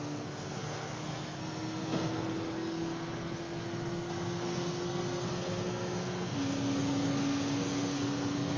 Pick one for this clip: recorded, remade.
remade